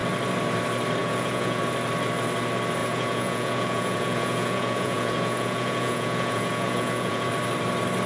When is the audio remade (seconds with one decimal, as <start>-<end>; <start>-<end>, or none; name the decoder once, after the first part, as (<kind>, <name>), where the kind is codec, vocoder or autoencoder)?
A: 1.0-1.6 (vocoder, Vocos); 2.8-7.3